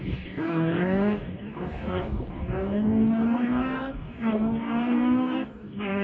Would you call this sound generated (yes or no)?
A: yes